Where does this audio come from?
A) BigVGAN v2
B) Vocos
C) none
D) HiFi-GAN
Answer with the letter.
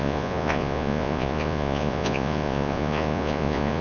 B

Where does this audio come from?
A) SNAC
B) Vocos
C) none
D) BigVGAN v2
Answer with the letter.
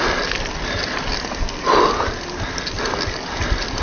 C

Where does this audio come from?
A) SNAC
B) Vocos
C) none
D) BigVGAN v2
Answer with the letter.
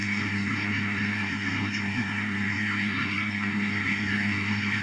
A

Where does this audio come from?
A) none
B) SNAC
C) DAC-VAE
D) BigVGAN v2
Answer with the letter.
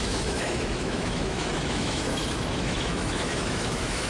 C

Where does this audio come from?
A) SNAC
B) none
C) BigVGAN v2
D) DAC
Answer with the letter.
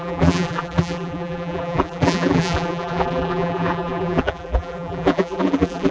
C